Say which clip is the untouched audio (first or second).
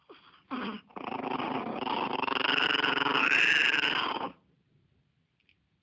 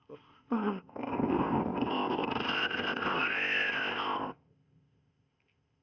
first